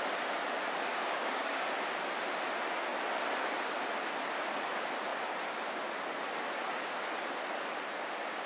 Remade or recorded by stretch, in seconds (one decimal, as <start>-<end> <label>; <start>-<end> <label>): 0.0-0.9 recorded; 0.9-1.6 remade; 1.6-8.5 recorded